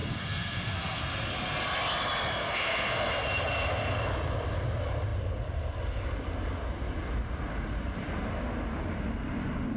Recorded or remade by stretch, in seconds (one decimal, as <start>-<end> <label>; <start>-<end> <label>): 0.0-1.0 remade; 1.0-2.4 recorded; 2.4-3.1 remade; 3.1-9.8 recorded